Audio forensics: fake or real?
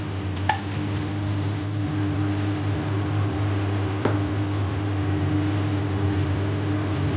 real